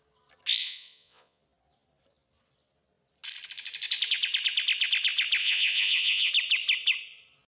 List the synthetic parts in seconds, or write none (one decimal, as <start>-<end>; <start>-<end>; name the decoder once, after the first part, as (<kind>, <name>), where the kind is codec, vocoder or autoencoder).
0.6-1.4 (vocoder, Vocos); 5.4-6.3